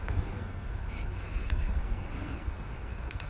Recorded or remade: remade